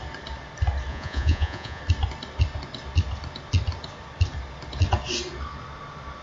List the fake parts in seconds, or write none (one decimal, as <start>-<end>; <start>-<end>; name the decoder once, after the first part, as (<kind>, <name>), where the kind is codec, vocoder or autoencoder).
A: 0.9-1.8 (vocoder, Vocos)